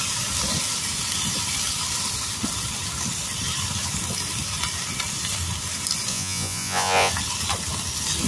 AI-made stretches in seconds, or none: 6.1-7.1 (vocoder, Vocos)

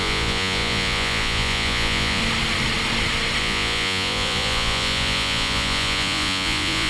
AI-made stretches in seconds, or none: 0.0-2.2 (vocoder, Vocos); 3.4-6.9

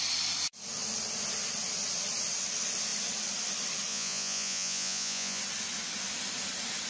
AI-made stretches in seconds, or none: 3.9-5.4 (vocoder, Vocos)